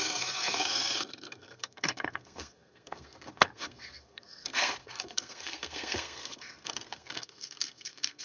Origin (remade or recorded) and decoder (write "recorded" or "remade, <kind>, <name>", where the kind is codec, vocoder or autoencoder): remade, codec, SNAC